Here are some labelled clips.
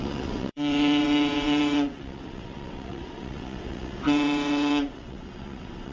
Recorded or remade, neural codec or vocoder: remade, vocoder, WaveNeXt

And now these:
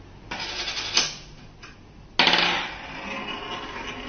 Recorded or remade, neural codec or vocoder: recorded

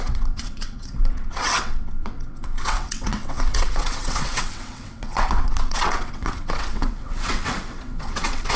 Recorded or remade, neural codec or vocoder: remade, vocoder, WaveNeXt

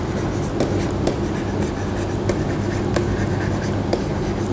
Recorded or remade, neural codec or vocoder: recorded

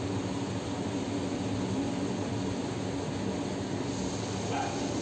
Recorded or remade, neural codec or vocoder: recorded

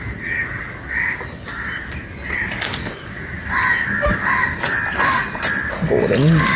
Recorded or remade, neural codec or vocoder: recorded